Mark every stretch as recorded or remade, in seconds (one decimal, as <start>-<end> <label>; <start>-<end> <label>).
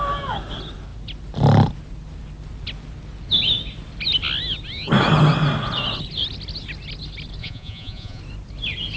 0.0-7.4 recorded; 7.4-8.2 remade; 8.2-9.0 recorded